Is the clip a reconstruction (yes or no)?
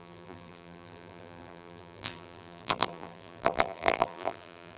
yes